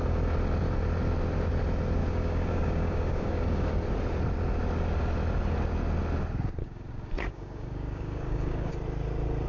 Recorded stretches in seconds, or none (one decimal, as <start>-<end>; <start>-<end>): 0.0-2.0; 3.7-6.6; 8.7-9.5